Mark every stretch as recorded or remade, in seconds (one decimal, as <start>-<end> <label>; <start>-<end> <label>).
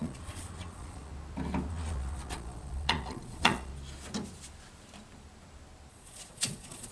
0.0-1.1 remade; 1.1-1.7 recorded; 1.7-3.7 remade; 3.7-5.9 recorded; 5.9-6.9 remade